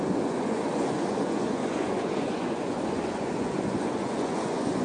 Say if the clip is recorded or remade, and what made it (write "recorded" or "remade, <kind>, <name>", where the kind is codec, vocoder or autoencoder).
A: remade, vocoder, Vocos